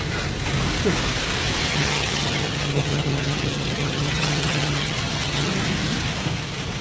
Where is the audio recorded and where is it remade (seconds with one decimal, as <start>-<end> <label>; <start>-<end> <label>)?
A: 0.0-1.7 recorded; 1.7-5.5 remade; 5.5-6.8 recorded